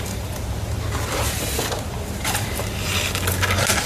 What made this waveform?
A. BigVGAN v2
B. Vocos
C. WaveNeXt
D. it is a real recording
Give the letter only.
D